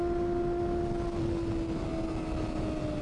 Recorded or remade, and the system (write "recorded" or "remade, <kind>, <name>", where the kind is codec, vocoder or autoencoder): recorded